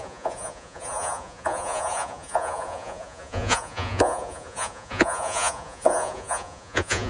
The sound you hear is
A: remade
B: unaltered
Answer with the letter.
A